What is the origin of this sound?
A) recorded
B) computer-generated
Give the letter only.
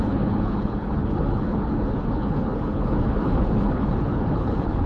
B